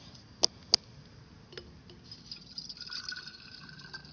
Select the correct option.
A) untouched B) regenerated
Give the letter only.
A